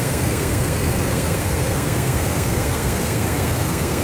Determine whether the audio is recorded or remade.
remade